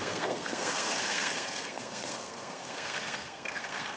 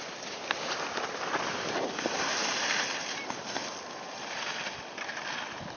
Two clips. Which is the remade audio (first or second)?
first